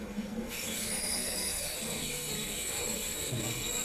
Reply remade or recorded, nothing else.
remade